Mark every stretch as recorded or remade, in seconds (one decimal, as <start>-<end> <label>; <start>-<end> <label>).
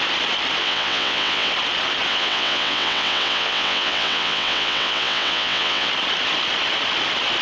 0.0-0.6 recorded; 0.6-1.5 remade; 1.5-2.1 recorded; 2.1-5.9 remade; 5.9-7.4 recorded